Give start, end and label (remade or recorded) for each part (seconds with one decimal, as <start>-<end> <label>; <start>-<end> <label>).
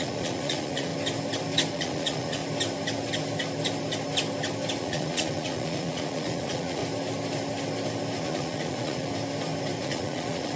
0.0-0.9 remade; 0.9-1.7 recorded; 1.7-2.4 remade; 2.4-4.8 recorded; 4.8-6.8 remade; 6.8-8.2 recorded; 8.2-9.1 remade; 9.1-9.8 recorded; 9.8-10.6 remade